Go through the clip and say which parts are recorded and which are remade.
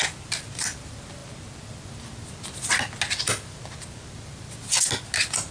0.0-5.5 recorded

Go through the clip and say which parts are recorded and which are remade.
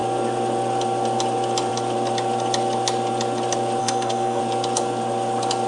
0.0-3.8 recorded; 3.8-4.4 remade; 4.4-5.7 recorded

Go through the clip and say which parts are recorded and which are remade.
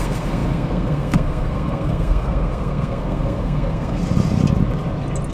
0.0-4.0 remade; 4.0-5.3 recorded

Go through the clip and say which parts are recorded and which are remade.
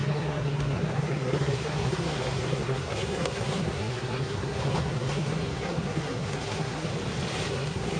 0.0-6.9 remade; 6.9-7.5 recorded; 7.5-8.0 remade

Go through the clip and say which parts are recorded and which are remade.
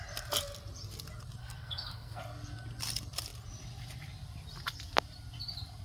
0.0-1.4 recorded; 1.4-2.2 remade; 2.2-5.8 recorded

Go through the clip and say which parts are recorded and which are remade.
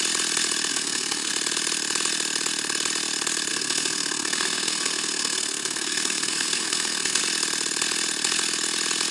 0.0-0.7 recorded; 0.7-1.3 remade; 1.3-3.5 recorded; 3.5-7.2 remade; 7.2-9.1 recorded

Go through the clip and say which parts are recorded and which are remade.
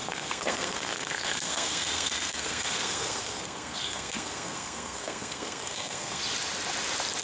0.0-6.2 remade; 6.2-7.2 recorded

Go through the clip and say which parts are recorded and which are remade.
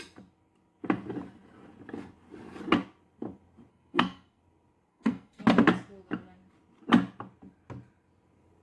0.0-3.7 recorded; 3.7-4.4 remade; 4.4-4.9 recorded; 4.9-5.4 remade; 5.4-8.6 recorded